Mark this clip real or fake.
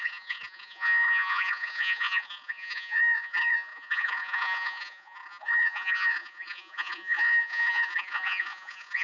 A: fake